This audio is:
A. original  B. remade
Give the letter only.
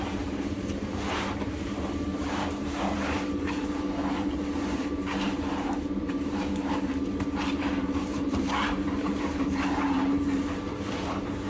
B